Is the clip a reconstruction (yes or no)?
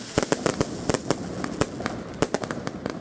no